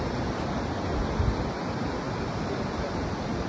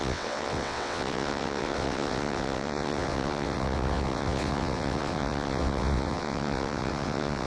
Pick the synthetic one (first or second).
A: second